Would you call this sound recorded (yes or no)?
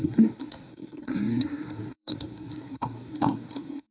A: no